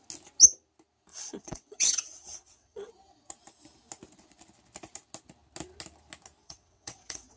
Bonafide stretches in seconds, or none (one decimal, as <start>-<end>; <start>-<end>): 0.0-1.1; 2.9-6.4